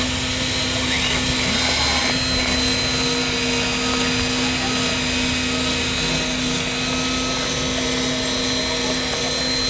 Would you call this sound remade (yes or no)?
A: no